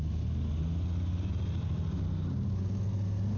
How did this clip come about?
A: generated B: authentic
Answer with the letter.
B